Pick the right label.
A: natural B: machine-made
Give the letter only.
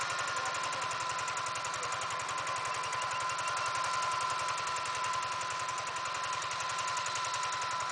A